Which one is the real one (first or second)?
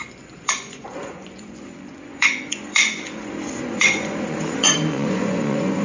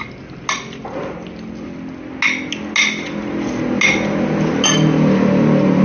second